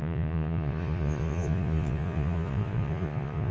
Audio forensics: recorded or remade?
remade